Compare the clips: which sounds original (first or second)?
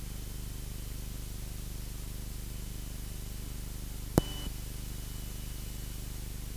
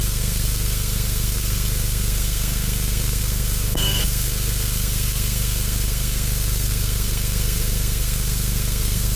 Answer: first